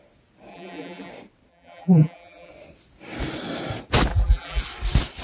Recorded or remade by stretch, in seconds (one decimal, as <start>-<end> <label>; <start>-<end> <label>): 0.0-0.5 recorded; 0.5-1.1 remade; 1.1-1.5 recorded; 1.5-2.5 remade; 2.5-4.1 recorded; 4.1-4.6 remade; 4.6-5.2 recorded